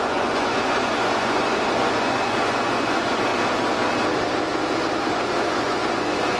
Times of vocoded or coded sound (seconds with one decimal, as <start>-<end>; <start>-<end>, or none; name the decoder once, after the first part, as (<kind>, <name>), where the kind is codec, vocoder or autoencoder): 0.0-3.3 (vocoder, Vocos); 5.1-6.4